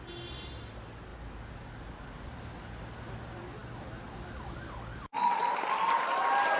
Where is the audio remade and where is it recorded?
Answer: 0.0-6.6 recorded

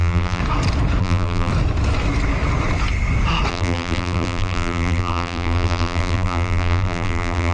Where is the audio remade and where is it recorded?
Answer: 0.0-0.4 remade; 0.4-1.0 recorded; 1.0-1.5 remade; 1.5-3.5 recorded; 3.5-7.5 remade